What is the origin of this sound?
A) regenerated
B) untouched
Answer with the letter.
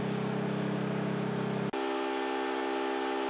B